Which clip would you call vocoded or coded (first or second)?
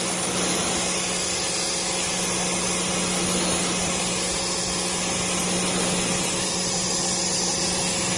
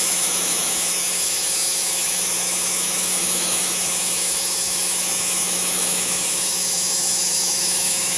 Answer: second